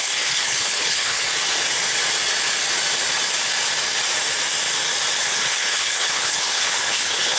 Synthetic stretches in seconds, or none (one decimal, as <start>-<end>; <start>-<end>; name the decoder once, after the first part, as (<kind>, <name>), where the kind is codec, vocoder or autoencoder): 0.0-1.2 (codec, HILCodec); 5.2-7.4